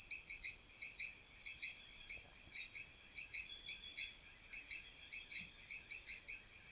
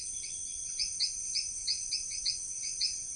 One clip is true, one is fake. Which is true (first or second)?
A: first